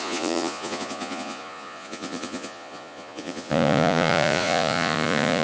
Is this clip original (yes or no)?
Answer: no